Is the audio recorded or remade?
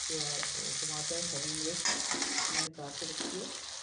recorded